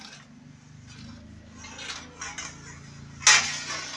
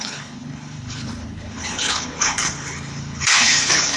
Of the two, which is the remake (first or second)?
second